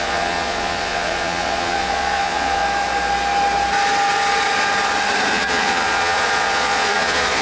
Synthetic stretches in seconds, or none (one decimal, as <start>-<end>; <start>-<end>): 0.0-2.6; 5.3-7.4